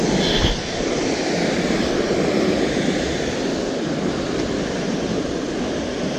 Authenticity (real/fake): real